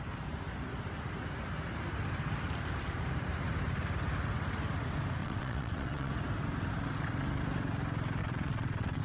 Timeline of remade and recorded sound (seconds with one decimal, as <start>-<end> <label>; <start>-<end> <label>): 0.0-5.2 recorded; 5.2-6.1 remade; 6.1-8.2 recorded; 8.2-9.0 remade